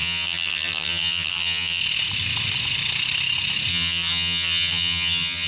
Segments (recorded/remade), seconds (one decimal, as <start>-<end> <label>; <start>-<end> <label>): 0.0-1.8 remade; 1.8-3.7 recorded; 3.7-5.5 remade